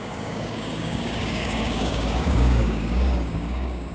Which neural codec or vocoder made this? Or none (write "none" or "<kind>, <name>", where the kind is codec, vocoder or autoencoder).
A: codec, DAC